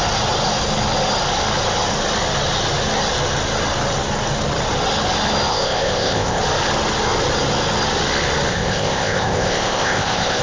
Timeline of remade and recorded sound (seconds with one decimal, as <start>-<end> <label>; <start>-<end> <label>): 0.0-5.5 recorded; 5.5-6.4 remade; 6.4-8.5 recorded; 8.5-10.4 remade